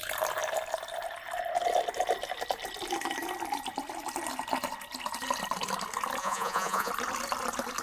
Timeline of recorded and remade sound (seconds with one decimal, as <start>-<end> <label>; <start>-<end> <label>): 0.0-6.2 recorded; 6.2-6.9 remade; 6.9-7.8 recorded